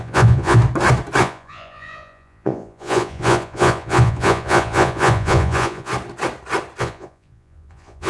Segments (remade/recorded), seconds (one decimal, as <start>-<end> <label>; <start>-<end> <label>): 0.0-0.6 remade; 0.6-1.2 recorded; 1.2-5.9 remade; 5.9-6.8 recorded; 6.8-8.1 remade